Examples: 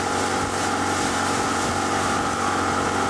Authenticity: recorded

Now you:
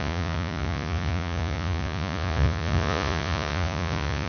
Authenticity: remade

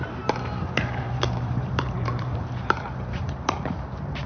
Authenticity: remade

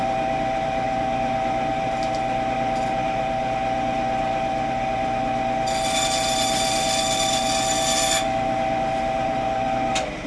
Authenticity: recorded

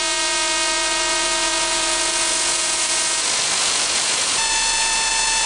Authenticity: remade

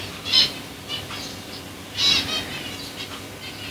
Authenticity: recorded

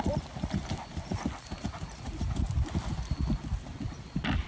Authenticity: recorded